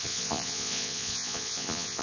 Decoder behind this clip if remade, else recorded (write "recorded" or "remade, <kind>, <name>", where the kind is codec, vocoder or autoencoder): remade, vocoder, Vocos